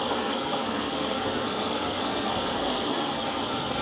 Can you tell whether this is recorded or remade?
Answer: remade